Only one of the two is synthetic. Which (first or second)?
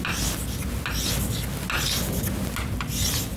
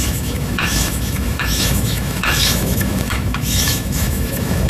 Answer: second